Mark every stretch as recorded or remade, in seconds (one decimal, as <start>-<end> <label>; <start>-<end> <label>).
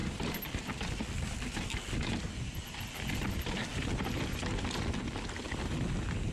0.0-6.3 recorded